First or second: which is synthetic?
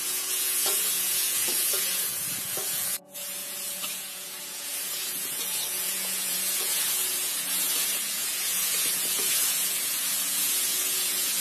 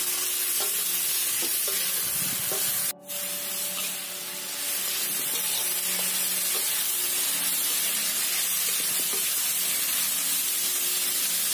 first